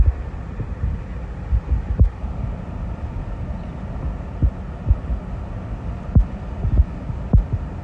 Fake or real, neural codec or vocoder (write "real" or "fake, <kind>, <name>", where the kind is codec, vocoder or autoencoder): real